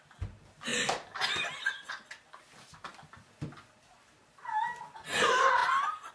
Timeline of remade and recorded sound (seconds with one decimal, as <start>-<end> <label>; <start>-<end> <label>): 0.0-6.1 recorded